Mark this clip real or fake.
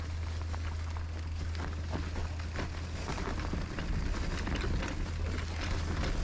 real